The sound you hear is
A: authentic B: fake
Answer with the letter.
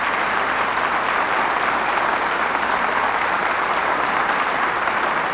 A